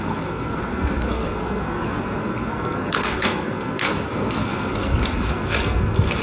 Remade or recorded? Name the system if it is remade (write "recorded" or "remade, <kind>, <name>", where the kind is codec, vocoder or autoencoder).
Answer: remade, codec, SNAC